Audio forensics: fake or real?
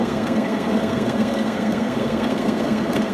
fake